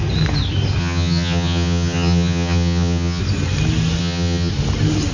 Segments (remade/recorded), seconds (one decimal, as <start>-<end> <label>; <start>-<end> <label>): 0.0-0.8 recorded; 0.8-3.2 remade; 3.2-4.0 recorded; 4.0-4.5 remade; 4.5-5.1 recorded